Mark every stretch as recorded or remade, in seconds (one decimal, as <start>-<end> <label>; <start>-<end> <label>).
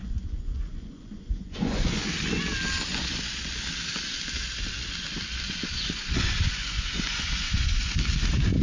0.0-2.1 remade; 2.1-2.9 recorded; 2.9-3.5 remade; 3.5-5.7 recorded; 5.7-8.0 remade; 8.0-8.6 recorded